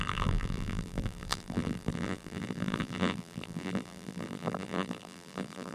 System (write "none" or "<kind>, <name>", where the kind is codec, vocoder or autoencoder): vocoder, BigVGAN v2